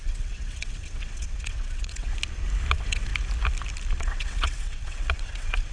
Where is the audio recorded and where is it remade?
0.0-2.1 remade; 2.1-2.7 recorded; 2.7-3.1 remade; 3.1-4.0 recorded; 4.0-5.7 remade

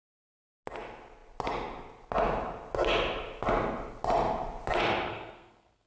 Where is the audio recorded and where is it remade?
0.0-5.1 recorded; 5.1-5.9 remade